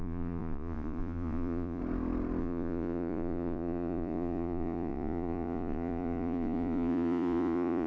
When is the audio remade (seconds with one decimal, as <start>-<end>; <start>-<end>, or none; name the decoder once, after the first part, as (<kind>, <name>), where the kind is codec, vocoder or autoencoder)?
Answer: 0.0-1.8 (vocoder, Vocos); 2.4-7.9